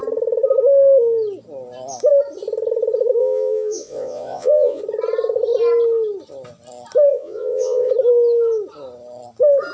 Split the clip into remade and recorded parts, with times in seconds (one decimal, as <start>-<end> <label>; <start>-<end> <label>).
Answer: 0.0-3.2 recorded; 3.2-4.8 remade; 4.8-7.1 recorded; 7.1-7.9 remade; 7.9-9.7 recorded